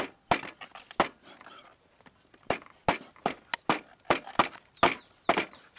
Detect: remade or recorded recorded